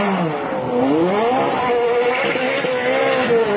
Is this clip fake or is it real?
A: real